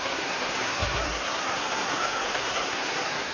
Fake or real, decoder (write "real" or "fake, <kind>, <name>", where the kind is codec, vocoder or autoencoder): fake, codec, SNAC